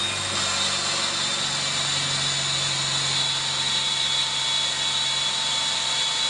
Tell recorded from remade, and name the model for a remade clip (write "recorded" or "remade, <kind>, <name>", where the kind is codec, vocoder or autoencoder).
recorded